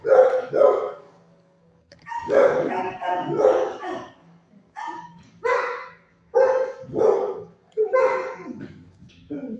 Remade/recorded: remade